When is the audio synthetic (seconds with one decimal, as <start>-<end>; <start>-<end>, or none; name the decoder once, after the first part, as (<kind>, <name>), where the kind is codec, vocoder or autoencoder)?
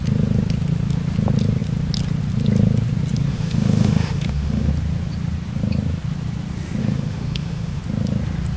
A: 3.3-4.7 (autoencoder, DAC-VAE); 6.8-7.8